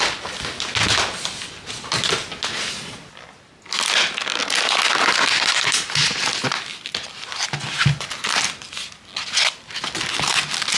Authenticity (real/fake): real